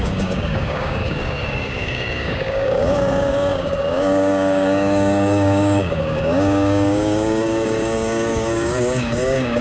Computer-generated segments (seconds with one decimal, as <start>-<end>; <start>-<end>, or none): 0.0-9.6